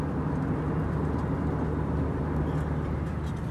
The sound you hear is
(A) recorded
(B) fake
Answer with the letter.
A